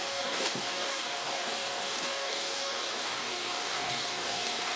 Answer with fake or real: fake